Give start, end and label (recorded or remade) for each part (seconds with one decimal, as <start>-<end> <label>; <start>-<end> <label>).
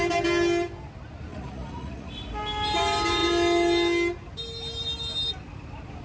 0.0-1.3 recorded; 1.3-2.1 remade; 2.1-6.0 recorded